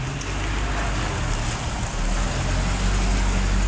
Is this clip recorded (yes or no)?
yes